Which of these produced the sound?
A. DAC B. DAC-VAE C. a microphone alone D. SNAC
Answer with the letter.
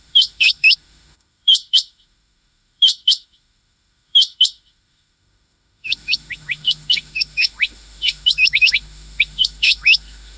B